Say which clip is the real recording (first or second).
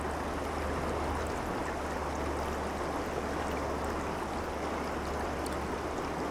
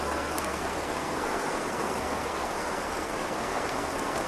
first